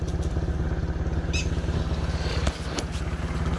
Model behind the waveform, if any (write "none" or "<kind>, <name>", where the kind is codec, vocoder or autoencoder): none